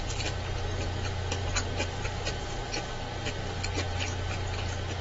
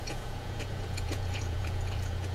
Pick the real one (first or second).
first